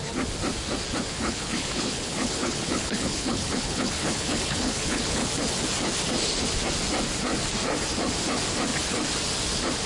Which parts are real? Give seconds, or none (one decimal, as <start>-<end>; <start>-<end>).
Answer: 0.0-1.1; 5.3-9.9